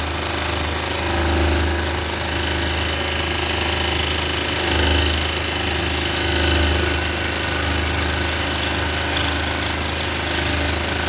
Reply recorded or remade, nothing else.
recorded